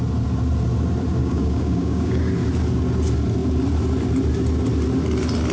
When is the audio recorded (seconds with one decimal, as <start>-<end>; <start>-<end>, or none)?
0.0-1.2; 2.3-5.5